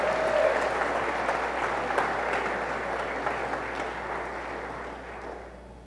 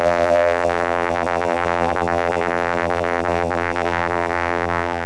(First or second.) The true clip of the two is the first